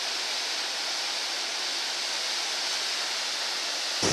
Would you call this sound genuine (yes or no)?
yes